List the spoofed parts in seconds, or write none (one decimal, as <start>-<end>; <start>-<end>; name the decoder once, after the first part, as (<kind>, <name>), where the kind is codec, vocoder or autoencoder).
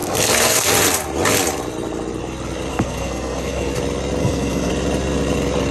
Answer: 0.0-0.7 (codec, SNAC); 2.7-3.7; 4.2-4.7